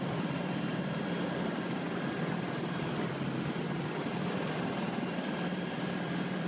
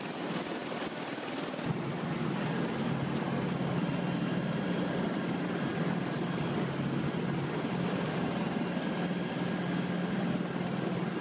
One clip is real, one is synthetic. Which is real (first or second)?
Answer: second